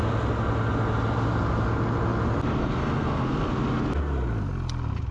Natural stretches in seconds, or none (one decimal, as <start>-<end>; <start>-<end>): 0.0-2.6; 3.5-5.1